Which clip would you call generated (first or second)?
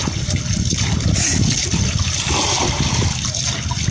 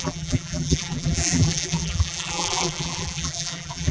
second